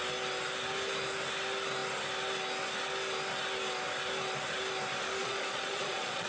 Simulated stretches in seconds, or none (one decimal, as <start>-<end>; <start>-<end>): 5.2-6.3